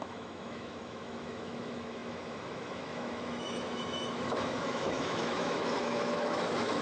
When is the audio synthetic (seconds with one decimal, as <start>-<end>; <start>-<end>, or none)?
0.0-6.8